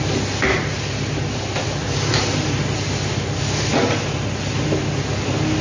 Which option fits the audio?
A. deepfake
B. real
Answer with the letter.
B